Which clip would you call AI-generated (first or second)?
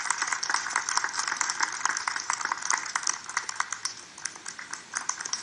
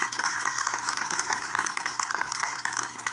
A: second